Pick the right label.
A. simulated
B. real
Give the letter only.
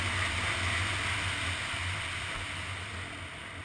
B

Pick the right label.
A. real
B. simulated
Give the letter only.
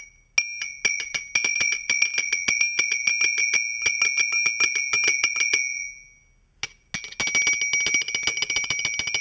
A